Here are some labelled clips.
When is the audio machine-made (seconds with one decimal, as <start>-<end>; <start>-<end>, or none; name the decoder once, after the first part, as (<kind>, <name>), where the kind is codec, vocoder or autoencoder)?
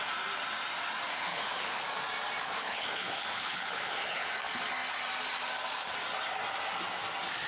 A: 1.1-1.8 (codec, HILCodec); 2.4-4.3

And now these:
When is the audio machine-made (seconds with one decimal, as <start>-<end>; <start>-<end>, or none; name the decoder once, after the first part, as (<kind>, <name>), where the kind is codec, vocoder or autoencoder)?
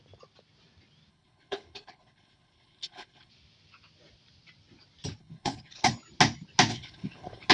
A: 1.1-3.3 (codec, HILCodec); 5.2-5.9; 6.7-7.5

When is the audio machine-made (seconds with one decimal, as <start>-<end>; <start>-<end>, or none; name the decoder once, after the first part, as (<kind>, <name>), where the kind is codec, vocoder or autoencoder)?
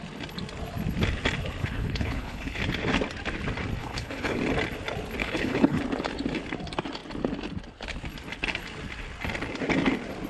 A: 1.6-2.6 (codec, HILCodec); 3.8-4.4; 5.2-5.8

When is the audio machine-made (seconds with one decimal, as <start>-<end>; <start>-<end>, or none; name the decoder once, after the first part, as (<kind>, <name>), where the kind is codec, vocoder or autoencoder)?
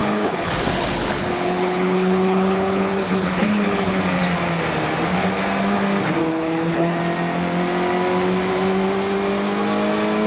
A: 0.0-4.0 (codec, HILCodec); 6.2-7.0